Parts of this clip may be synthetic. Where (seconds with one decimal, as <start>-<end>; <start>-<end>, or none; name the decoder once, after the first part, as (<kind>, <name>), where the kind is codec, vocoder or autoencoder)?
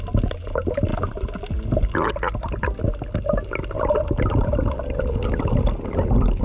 none